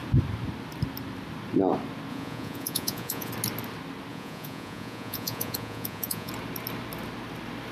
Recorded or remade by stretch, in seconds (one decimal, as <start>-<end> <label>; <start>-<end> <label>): 0.0-2.1 recorded; 2.1-3.3 remade; 3.3-4.1 recorded; 4.1-6.3 remade; 6.3-7.7 recorded